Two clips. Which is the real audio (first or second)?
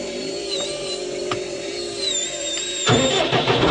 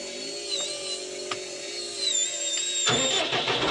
second